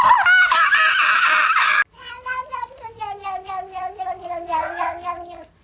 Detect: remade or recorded recorded